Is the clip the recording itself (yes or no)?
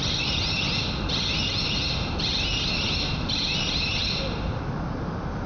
yes